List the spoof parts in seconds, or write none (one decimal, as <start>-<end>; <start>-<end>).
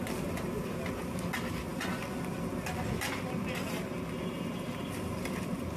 none